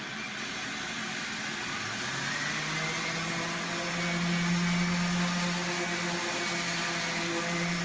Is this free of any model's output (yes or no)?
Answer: yes